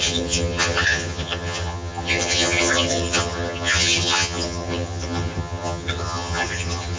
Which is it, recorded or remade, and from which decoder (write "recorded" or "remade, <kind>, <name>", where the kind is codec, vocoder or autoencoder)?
remade, vocoder, HiFi-GAN